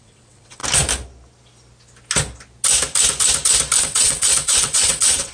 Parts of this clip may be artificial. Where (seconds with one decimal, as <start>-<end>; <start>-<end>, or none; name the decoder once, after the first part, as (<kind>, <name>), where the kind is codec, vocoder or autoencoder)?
0.0-0.6 (vocoder, WaveNeXt); 3.8-5.3